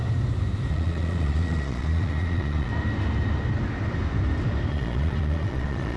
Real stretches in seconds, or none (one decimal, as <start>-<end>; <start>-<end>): 0.0-0.7; 2.7-4.7